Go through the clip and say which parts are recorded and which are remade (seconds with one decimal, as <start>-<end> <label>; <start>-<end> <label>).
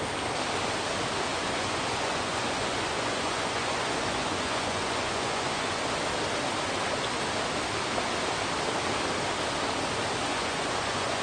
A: 0.0-1.3 recorded; 1.3-5.8 remade; 5.8-10.3 recorded; 10.3-11.2 remade